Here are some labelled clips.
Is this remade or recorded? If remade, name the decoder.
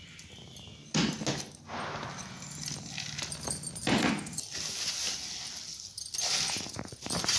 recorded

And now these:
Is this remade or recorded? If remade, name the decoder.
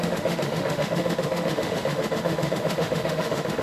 remade, autoencoder, DAC-VAE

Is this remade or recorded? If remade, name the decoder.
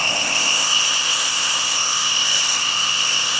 remade, codec, ZipCodec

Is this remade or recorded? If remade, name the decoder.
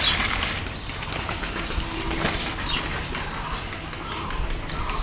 recorded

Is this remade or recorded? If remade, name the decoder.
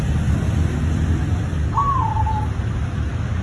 recorded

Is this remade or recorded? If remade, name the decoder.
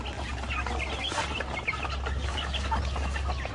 recorded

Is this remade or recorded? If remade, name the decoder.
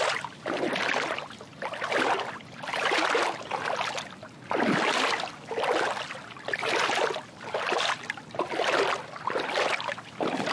recorded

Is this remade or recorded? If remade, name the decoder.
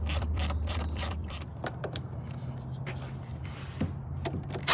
remade, vocoder, BigVGAN v2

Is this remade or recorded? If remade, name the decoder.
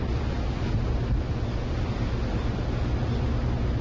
recorded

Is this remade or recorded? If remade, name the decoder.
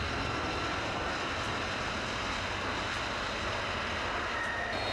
recorded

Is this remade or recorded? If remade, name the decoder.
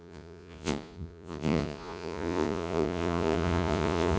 remade, vocoder, Vocos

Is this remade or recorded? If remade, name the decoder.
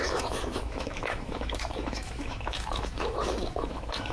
remade, autoencoder, DAC-VAE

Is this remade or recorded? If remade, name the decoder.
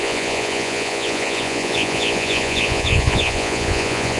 remade, vocoder, Vocos